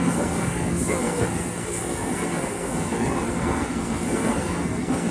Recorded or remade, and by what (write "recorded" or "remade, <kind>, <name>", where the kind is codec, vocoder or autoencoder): remade, codec, SNAC